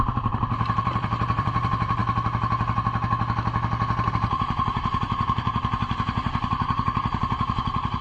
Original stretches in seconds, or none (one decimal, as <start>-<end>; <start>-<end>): 2.0-4.1